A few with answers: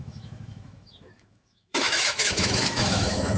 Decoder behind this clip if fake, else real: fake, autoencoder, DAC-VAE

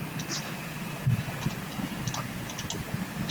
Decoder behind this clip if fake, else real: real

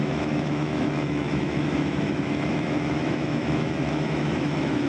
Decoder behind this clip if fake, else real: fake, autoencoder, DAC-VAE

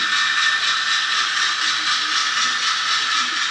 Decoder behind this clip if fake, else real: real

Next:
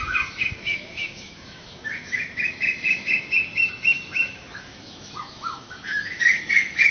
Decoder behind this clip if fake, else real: fake, autoencoder, DAC-VAE